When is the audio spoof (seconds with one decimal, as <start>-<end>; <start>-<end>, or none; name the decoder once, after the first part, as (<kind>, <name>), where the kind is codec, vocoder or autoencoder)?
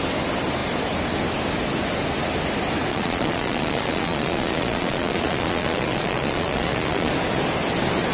2.9-7.1 (vocoder, Vocos)